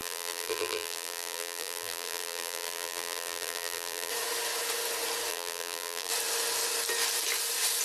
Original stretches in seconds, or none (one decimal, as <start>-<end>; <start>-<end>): 4.1-5.3; 6.1-7.8